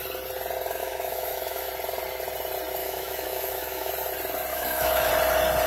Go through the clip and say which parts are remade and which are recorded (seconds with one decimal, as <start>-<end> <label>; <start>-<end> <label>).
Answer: 0.0-0.8 recorded; 0.8-1.7 remade; 1.7-2.8 recorded; 2.8-3.9 remade; 3.9-4.5 recorded; 4.5-5.1 remade; 5.1-5.7 recorded